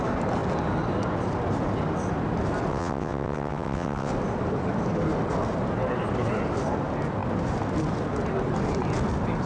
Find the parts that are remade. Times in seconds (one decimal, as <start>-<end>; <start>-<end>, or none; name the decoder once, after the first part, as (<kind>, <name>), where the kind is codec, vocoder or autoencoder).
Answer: 2.7-4.1 (vocoder, WaveNeXt)